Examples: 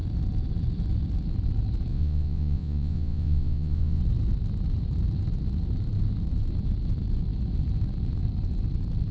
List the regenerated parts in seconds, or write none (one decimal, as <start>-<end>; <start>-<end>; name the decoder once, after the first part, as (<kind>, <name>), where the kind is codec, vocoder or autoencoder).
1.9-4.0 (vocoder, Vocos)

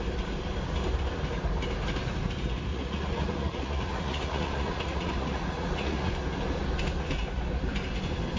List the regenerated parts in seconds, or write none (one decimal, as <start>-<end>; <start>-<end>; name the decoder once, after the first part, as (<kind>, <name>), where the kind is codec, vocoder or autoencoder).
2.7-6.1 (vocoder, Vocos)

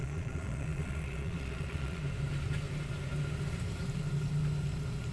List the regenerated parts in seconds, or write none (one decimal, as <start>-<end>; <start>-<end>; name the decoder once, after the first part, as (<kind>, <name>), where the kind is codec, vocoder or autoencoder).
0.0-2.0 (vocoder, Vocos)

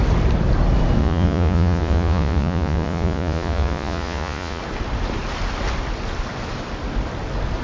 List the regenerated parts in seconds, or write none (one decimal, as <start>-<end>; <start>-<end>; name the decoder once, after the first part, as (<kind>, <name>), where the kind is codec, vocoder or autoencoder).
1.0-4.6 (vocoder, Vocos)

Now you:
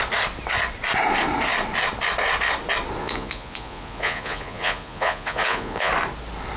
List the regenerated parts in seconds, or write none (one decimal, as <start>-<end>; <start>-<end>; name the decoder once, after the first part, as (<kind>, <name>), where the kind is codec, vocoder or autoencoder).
3.0-5.9 (vocoder, Vocos)

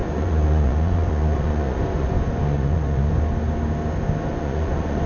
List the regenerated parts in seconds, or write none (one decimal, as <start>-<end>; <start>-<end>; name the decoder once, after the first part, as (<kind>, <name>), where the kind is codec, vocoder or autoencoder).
0.0-3.1 (vocoder, Vocos); 4.3-5.1

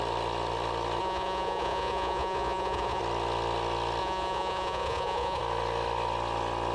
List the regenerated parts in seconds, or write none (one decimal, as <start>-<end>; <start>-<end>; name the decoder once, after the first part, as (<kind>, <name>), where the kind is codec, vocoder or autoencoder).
1.0-3.0 (vocoder, Vocos); 4.0-5.4

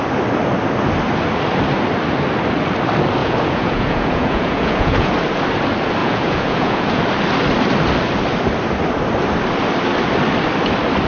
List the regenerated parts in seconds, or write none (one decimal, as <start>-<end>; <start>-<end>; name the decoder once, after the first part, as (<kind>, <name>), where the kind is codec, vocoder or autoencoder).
3.2-5.1 (vocoder, Vocos); 6.0-7.0